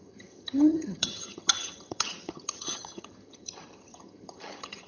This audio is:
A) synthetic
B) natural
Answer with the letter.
A